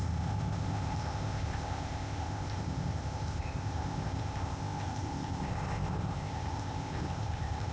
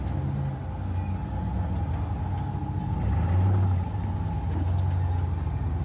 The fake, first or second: first